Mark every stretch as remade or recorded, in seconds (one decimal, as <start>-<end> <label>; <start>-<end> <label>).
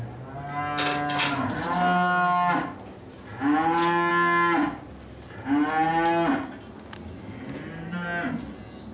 0.0-8.9 recorded